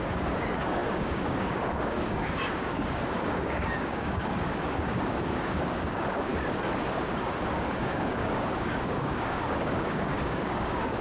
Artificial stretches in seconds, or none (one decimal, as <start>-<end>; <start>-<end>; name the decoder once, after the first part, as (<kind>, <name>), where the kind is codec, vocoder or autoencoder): 0.0-6.3 (codec, DAC); 7.5-11.0